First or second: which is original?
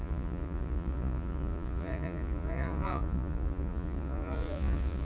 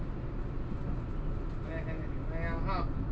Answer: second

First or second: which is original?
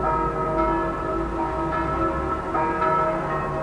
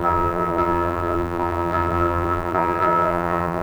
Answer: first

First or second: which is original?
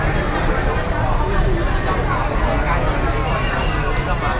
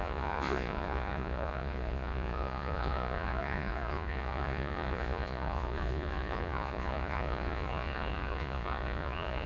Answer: first